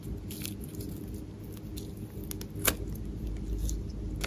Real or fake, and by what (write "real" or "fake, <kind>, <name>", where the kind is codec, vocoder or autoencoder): real